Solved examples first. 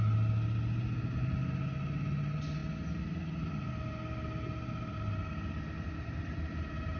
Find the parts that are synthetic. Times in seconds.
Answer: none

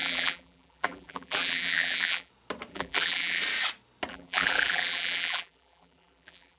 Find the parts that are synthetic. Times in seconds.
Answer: 0.0-2.3 (vocoder, BigVGAN v2); 2.7-3.4; 4.1-6.6

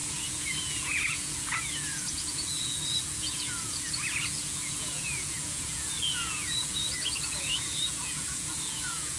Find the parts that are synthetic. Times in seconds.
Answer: 0.0-9.2 (vocoder, Vocos)